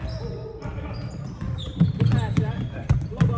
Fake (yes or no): no